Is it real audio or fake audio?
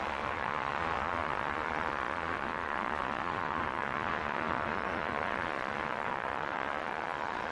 fake